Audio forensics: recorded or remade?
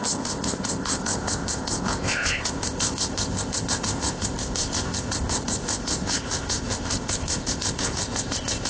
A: remade